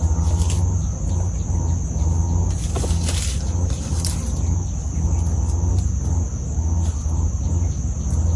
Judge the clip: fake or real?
real